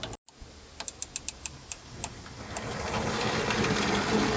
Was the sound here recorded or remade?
recorded